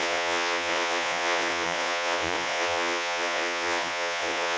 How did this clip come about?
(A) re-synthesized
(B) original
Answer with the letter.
A